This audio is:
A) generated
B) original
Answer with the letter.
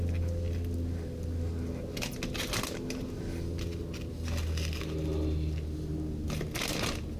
B